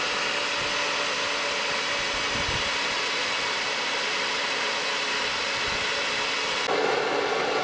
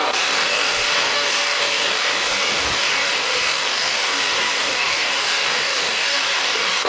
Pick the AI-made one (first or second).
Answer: second